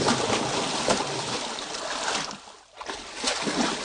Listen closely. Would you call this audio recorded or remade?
recorded